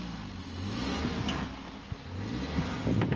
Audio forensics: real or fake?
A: real